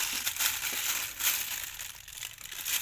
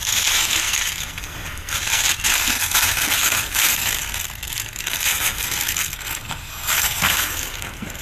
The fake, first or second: second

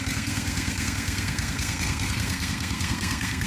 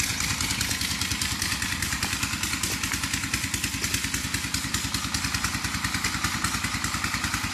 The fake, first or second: first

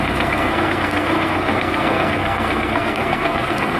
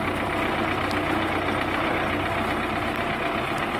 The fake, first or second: first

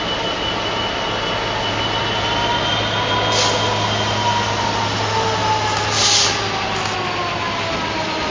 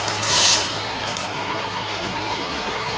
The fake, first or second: second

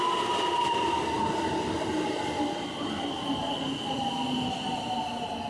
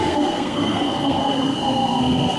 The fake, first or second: second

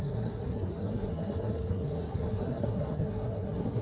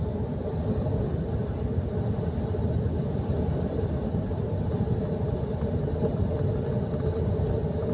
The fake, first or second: first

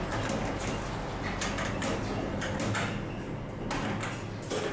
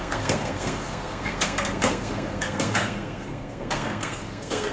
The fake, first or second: second